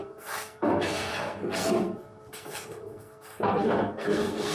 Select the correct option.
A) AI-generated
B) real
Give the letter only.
A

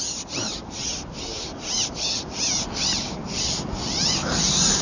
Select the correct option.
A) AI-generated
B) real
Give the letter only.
B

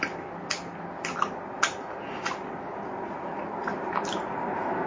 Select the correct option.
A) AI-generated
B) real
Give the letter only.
B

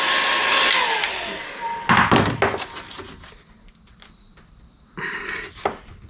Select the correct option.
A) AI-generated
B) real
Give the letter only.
B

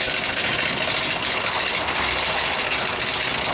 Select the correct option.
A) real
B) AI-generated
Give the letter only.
A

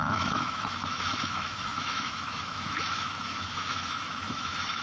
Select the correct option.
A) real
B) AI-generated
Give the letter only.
B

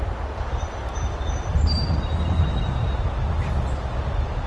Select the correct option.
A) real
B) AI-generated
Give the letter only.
A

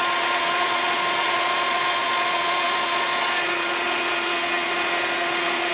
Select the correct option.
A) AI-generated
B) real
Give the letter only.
A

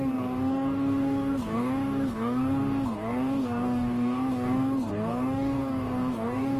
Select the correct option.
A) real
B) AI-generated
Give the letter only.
B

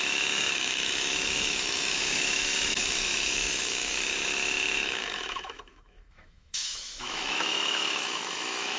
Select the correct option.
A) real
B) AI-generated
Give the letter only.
B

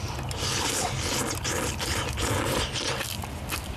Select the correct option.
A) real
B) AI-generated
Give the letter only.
A